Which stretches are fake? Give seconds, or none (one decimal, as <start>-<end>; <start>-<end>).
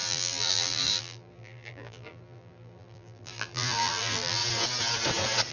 0.0-4.4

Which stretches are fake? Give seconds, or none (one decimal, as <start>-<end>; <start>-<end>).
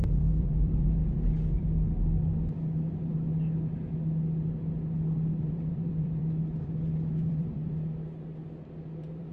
0.0-1.0; 5.4-6.2; 7.1-9.3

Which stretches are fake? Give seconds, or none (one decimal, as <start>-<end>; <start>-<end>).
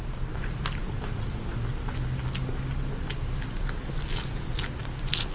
none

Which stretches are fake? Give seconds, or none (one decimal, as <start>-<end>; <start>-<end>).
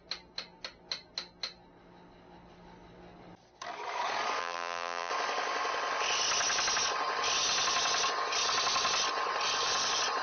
4.4-5.1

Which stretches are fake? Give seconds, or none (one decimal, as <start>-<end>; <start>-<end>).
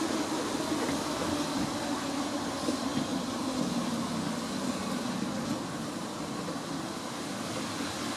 none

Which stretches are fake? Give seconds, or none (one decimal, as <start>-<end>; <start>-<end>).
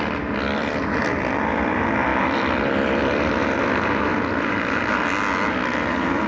4.1-4.8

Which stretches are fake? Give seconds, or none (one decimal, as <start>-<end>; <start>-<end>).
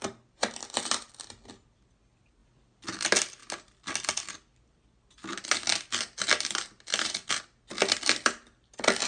0.6-1.1; 6.9-7.4